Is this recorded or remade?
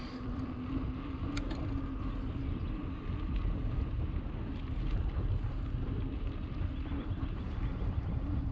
recorded